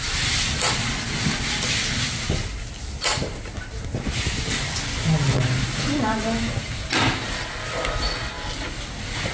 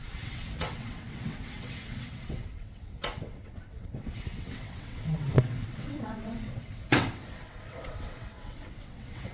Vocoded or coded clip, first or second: second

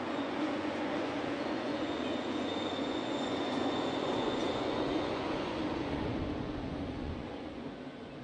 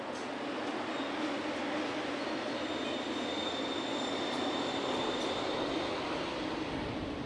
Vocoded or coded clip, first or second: first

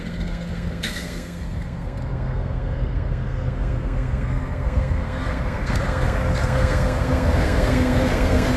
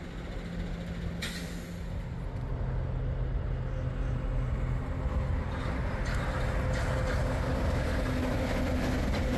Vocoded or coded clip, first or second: first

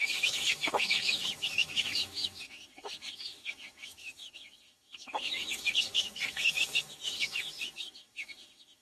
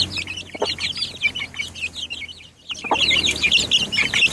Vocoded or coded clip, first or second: first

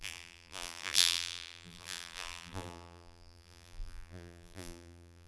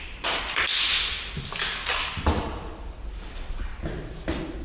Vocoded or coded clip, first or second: first